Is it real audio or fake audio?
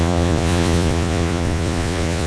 fake